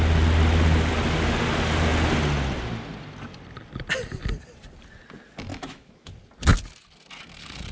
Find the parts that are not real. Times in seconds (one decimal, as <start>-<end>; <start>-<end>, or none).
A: 5.5-6.1